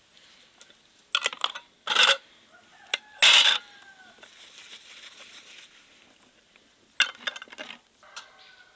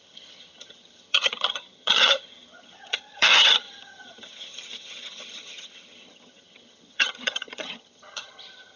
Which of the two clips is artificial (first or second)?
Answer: second